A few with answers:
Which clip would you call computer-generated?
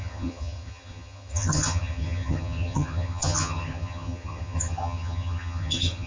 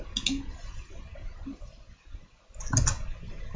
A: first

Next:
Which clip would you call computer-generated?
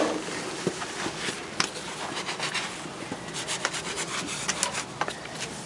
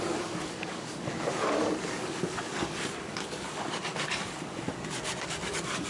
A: second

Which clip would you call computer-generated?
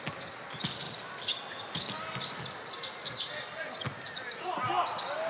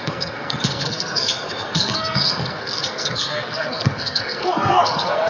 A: second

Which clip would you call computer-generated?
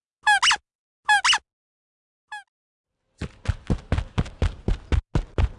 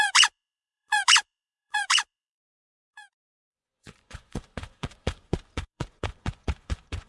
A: second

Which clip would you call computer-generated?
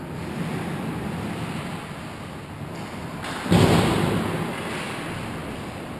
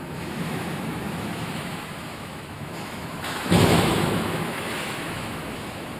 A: second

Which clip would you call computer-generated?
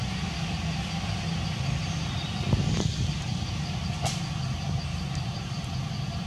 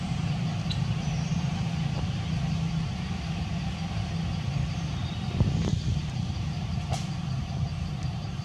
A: second